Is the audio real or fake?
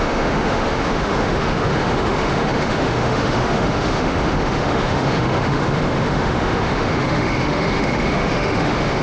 fake